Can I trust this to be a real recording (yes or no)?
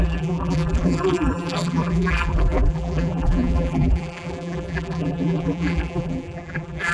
no